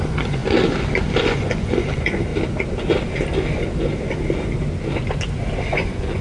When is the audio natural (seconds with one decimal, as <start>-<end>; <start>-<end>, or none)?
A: 0.4-1.2; 2.3-5.7